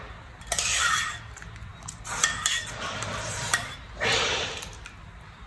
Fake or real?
fake